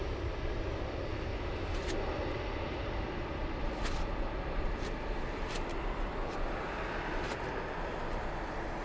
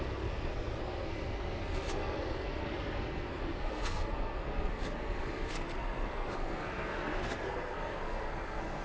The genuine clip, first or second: first